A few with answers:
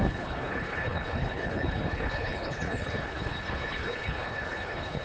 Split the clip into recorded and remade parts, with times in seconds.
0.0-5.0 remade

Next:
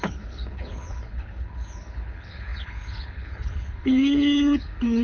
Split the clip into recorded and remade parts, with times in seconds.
0.0-5.0 remade